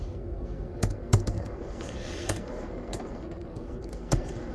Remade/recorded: remade